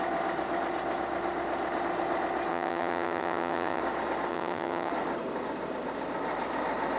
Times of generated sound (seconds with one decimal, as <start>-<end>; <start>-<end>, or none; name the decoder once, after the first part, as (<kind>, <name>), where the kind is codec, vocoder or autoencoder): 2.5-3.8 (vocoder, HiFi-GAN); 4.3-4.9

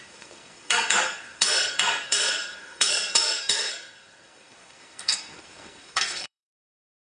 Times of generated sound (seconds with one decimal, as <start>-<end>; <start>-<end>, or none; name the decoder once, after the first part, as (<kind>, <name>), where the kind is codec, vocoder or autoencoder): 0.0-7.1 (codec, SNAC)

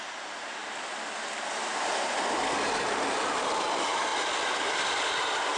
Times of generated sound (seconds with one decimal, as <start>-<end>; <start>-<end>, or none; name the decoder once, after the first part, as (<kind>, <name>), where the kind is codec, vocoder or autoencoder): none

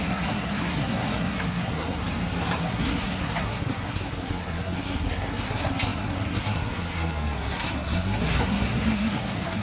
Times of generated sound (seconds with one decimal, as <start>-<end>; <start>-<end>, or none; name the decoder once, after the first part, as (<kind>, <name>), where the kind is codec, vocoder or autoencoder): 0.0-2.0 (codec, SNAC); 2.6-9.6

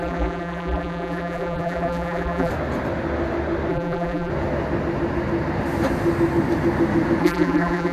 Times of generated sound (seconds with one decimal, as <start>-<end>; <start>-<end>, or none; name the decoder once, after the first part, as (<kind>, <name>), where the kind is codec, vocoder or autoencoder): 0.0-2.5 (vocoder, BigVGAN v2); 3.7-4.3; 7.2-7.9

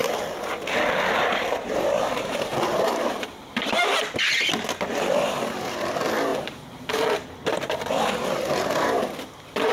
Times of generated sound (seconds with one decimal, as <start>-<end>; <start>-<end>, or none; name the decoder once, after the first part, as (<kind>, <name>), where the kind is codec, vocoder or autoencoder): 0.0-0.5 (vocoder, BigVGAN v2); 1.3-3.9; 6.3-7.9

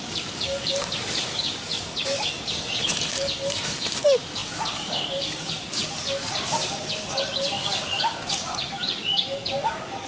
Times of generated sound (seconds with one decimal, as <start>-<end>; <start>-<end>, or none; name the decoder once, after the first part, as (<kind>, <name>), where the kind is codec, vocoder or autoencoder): 0.0-10.1 (codec, DAC)

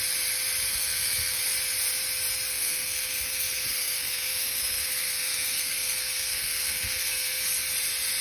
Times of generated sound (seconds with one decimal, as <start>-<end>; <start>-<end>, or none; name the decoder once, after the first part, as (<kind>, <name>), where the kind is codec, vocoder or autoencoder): 0.7-1.4 (codec, SNAC); 2.5-7.4